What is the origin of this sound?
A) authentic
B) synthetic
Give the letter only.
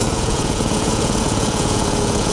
B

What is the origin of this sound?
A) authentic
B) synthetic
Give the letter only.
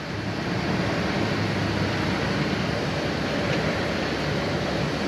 A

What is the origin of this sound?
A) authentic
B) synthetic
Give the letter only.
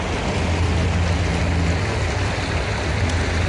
A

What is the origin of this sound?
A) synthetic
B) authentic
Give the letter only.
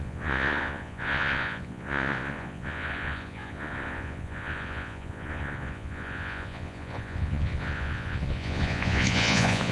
A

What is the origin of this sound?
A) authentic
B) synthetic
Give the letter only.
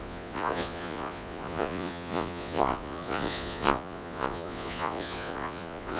B